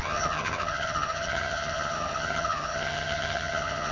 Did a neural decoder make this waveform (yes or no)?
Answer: yes